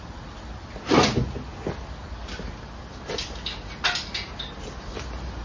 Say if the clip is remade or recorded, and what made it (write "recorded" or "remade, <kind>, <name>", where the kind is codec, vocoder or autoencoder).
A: recorded